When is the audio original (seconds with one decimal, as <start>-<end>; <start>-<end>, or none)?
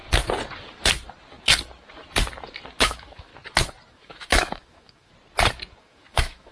0.0-2.8; 3.3-3.9; 5.1-5.8